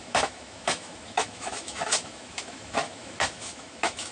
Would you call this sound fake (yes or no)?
yes